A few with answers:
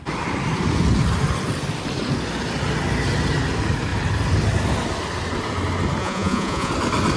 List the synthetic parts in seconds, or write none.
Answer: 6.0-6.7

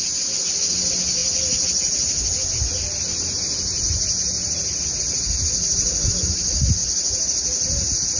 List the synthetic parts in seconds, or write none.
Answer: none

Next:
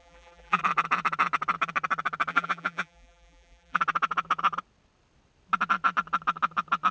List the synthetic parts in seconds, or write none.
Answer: 0.0-0.6; 2.3-3.8